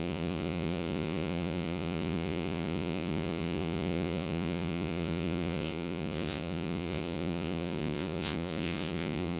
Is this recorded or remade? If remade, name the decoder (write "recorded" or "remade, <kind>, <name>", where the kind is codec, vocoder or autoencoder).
remade, vocoder, Vocos